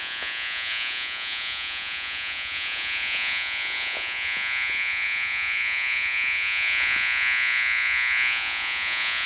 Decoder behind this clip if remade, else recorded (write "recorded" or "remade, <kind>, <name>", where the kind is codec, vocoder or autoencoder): remade, vocoder, Vocos